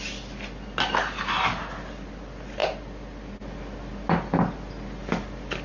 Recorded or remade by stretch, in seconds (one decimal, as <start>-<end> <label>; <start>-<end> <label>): 0.0-5.6 recorded